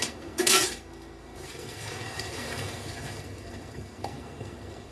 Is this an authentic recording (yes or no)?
no